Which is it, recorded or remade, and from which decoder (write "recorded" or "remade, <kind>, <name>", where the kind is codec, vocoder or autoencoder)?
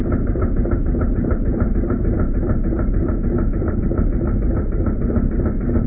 remade, vocoder, BigVGAN v2